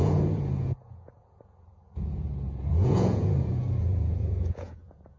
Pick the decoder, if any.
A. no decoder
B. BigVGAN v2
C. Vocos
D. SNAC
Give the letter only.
C